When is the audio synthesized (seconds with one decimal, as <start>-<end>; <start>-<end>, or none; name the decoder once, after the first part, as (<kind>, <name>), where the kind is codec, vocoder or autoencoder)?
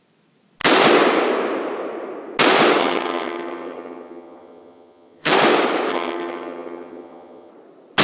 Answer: 2.8-5.3 (vocoder, HiFi-GAN); 5.9-7.5